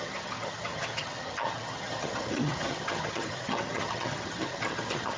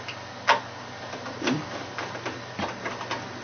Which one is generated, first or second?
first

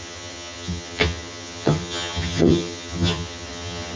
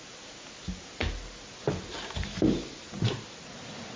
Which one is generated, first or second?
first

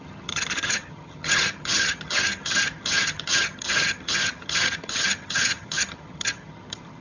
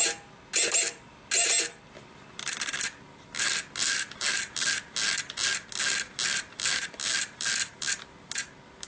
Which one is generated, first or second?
first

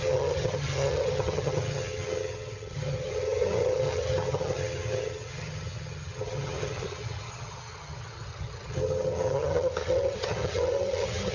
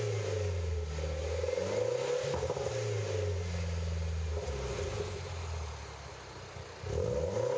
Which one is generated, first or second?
first